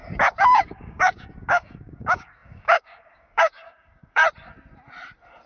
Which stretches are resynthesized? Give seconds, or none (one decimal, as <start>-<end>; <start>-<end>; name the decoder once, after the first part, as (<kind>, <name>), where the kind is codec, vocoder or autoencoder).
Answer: 0.0-4.2 (codec, DAC)